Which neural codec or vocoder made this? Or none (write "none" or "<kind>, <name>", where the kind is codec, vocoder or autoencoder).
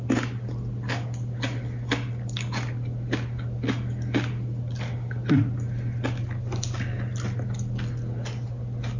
none